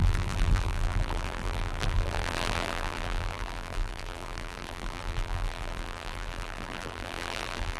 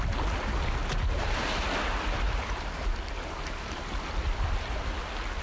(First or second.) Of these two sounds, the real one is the second